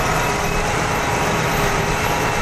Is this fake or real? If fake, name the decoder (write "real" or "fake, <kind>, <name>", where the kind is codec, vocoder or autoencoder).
real